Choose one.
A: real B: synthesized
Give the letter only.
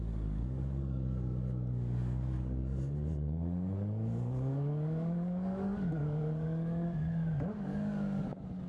B